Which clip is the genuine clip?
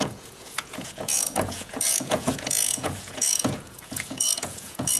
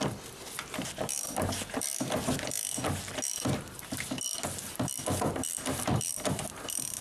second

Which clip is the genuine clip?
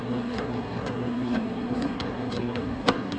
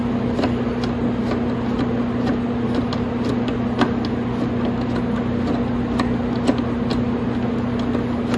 second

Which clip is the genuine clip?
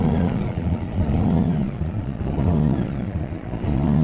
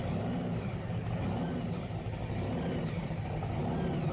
second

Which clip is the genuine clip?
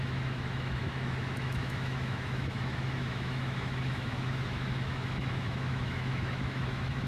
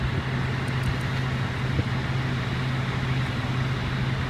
second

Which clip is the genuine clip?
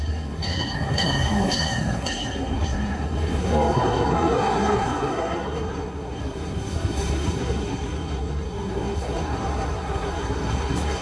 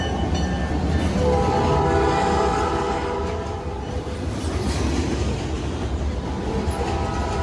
second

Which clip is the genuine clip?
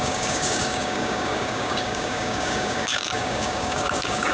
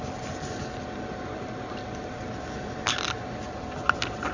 second